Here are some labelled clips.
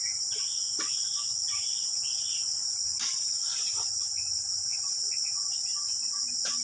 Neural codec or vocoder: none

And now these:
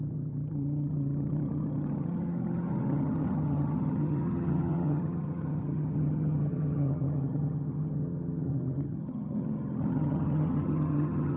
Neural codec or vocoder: vocoder, HiFi-GAN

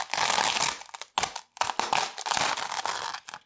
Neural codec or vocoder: none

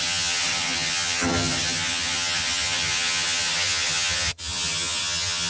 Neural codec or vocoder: vocoder, HiFi-GAN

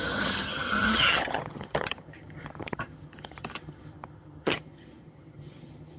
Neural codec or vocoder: vocoder, HiFi-GAN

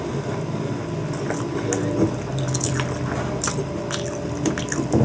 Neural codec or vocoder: none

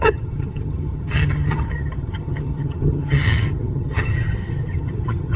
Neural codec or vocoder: vocoder, HiFi-GAN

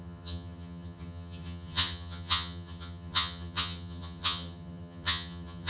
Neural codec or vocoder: vocoder, HiFi-GAN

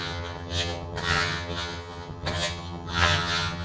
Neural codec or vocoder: vocoder, HiFi-GAN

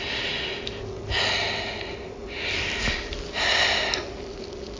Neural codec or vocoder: none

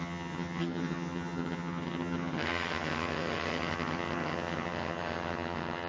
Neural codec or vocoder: vocoder, HiFi-GAN